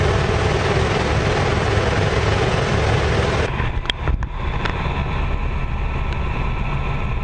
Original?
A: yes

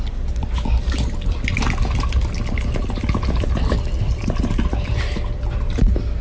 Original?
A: yes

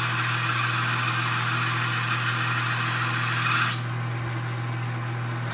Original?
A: yes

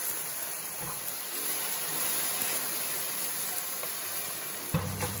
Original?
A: no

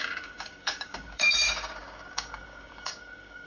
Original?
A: no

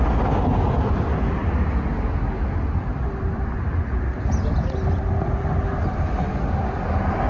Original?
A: yes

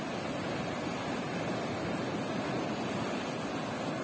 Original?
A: yes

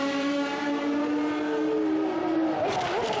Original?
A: yes